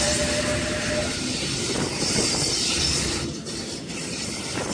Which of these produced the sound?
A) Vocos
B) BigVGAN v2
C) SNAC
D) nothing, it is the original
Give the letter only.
D